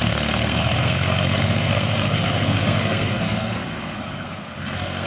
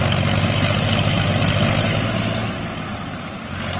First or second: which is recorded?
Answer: second